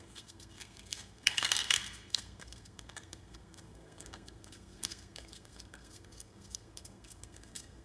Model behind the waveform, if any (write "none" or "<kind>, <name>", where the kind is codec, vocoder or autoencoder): codec, SNAC